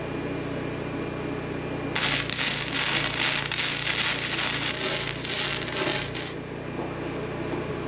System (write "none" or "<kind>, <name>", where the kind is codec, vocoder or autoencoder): none